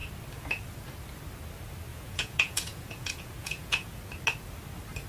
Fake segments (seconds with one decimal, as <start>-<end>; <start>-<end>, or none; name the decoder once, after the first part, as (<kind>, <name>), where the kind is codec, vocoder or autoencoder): 1.9-4.0 (vocoder, Vocos)